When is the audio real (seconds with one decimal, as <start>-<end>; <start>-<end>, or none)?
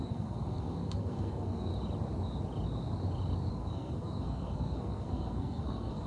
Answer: 1.7-3.5